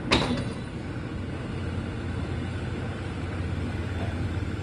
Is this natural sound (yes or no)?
yes